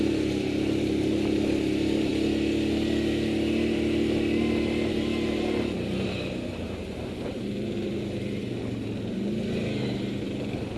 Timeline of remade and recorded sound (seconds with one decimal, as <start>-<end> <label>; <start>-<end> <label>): 0.0-2.1 remade; 2.1-4.9 recorded; 4.9-8.4 remade; 8.4-10.2 recorded; 10.2-10.8 remade